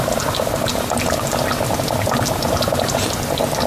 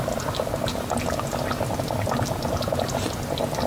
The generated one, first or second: first